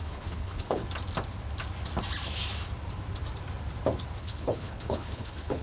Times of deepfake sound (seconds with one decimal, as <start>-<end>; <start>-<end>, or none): 0.0-0.8; 4.2-5.6